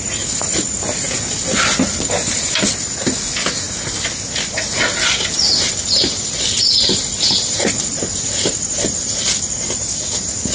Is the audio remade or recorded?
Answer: recorded